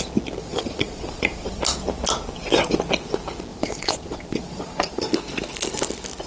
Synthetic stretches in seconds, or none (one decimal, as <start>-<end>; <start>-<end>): 0.4-1.6; 3.5-5.1